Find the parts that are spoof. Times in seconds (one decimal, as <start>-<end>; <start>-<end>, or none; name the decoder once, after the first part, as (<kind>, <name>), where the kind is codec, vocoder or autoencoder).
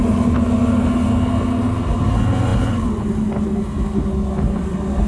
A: none